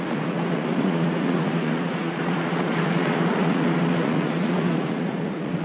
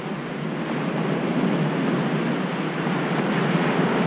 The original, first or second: second